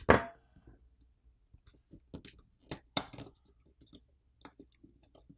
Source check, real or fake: real